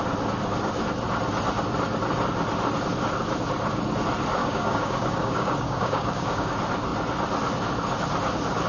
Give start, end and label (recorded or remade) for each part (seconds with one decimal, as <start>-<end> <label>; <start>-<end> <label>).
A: 0.0-4.4 recorded; 4.4-6.5 remade; 6.5-8.7 recorded